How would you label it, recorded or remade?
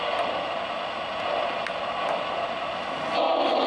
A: recorded